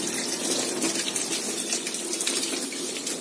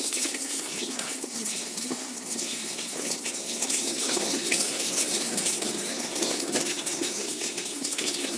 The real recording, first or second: first